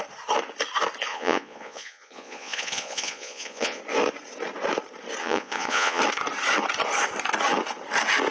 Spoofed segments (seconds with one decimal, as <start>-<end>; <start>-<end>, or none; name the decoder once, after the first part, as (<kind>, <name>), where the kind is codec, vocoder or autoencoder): 1.1-3.8 (vocoder, Vocos); 5.2-6.0